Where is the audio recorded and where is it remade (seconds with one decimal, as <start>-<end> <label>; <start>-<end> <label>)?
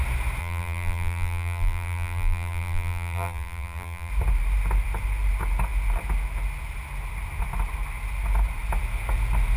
0.0-0.4 recorded; 0.4-4.1 remade; 4.1-9.6 recorded